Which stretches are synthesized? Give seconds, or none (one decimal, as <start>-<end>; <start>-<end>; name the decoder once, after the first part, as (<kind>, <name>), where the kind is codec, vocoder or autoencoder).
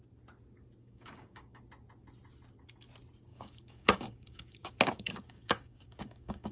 0.8-1.6 (codec, DAC); 3.3-6.5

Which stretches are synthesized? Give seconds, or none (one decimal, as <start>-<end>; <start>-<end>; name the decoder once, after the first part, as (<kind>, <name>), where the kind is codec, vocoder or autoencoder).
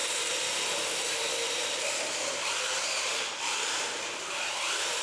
none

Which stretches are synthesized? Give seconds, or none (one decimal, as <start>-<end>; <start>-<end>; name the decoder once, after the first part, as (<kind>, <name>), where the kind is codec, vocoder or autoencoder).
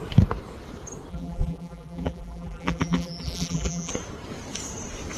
1.1-3.9 (vocoder, BigVGAN v2)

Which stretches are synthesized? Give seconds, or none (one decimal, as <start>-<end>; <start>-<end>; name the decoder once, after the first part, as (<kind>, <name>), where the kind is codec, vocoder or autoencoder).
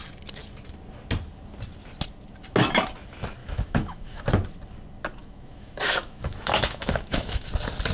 3.4-4.2 (autoencoder, DAC-VAE); 5.2-7.5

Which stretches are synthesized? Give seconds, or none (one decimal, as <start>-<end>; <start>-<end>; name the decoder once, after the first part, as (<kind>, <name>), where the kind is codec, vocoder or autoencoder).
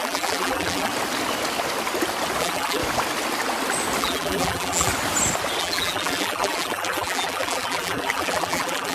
0.0-0.9 (vocoder, BigVGAN v2); 2.4-2.8; 4.0-4.9; 5.6-8.9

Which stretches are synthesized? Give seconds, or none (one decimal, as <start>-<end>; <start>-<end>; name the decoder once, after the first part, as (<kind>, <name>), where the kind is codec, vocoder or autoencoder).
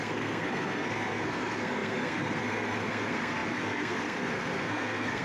0.0-5.2 (codec, SNAC)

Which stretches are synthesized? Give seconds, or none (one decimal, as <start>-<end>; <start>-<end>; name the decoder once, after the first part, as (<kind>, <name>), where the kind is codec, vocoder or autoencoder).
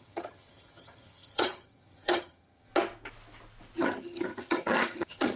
0.0-2.7 (vocoder, HiFi-GAN); 3.8-5.4